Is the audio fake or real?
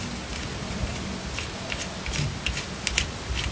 real